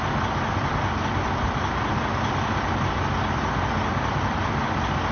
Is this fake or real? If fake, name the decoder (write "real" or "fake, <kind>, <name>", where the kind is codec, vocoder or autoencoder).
real